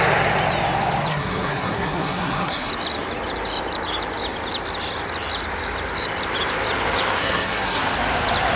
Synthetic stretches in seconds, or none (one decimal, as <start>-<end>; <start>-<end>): 1.1-2.7; 7.2-7.8